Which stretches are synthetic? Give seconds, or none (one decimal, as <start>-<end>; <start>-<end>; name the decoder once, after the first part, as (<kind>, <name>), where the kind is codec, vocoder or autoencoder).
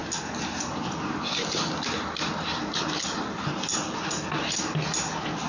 none